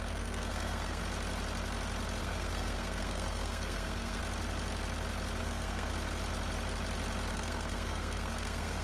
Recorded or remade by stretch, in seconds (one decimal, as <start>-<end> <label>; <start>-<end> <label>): 0.0-1.0 remade; 1.0-2.2 recorded; 2.2-4.2 remade; 4.2-5.4 recorded; 5.4-5.9 remade; 5.9-7.3 recorded; 7.3-8.8 remade